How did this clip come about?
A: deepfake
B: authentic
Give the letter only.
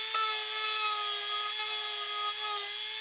B